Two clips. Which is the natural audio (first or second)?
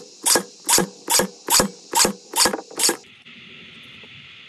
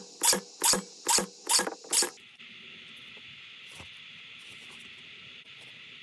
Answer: second